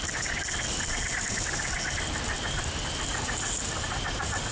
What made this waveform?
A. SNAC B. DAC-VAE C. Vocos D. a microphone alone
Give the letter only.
D